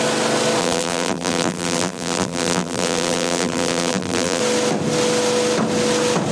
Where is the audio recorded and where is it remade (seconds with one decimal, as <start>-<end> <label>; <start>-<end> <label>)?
0.0-0.6 recorded; 0.6-4.4 remade; 4.4-6.3 recorded